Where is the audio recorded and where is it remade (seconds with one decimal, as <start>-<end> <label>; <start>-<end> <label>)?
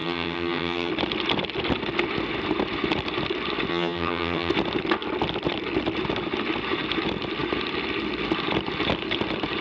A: 0.0-0.9 remade; 0.9-3.7 recorded; 3.7-4.5 remade; 4.5-9.6 recorded